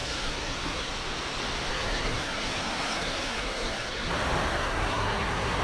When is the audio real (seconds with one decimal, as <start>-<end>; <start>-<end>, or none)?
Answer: 0.9-1.7; 4.1-4.5